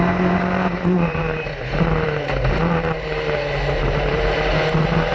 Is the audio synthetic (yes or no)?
yes